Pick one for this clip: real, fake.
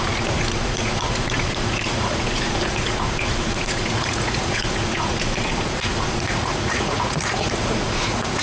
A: fake